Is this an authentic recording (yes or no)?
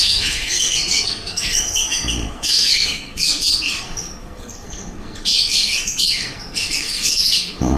no